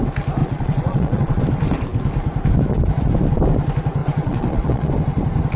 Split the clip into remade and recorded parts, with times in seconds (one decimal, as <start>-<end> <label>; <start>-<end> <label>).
0.0-0.4 recorded; 0.4-1.4 remade; 1.4-4.0 recorded; 4.0-4.9 remade; 4.9-5.6 recorded